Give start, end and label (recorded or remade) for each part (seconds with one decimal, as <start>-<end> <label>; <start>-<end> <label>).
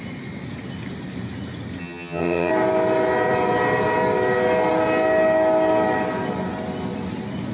0.0-1.8 recorded; 1.8-2.5 remade; 2.5-7.5 recorded